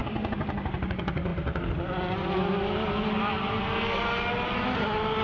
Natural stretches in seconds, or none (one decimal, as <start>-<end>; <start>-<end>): 0.0-5.2